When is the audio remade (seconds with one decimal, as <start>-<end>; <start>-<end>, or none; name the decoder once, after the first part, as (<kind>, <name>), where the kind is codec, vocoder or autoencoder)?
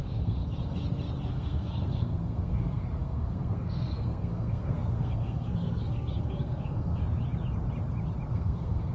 0.0-0.4 (codec, SNAC); 1.3-7.0; 8.3-8.9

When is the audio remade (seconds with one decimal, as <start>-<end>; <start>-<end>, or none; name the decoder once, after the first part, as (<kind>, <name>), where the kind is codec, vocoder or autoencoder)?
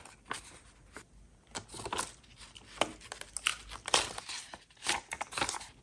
none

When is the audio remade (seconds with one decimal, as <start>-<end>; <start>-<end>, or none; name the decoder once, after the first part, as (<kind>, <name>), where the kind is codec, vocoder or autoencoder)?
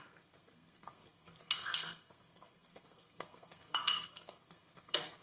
0.0-5.2 (codec, SNAC)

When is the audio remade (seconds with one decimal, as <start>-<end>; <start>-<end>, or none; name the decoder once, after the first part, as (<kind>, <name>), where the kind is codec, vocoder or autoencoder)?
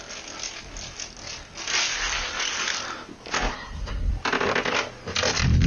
3.5-4.1 (codec, SNAC)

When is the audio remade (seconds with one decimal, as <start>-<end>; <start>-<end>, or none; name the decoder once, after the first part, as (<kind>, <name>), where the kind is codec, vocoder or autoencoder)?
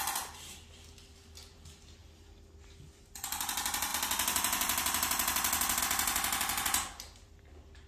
none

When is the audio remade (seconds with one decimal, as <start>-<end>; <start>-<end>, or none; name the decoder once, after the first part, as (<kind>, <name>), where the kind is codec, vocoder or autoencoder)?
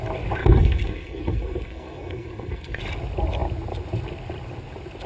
0.4-2.8 (codec, SNAC)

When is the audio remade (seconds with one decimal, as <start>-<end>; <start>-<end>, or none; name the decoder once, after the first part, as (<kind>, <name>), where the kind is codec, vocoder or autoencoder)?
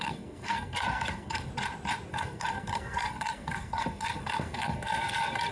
0.0-1.5 (codec, SNAC); 2.1-5.5